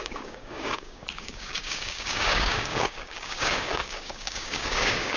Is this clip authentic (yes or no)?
no